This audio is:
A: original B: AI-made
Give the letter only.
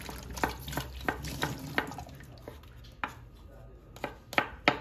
A